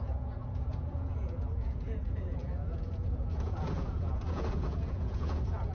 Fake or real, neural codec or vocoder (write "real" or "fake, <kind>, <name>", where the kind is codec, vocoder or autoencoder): fake, vocoder, Vocos